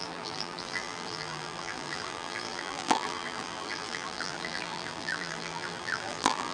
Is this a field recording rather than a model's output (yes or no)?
no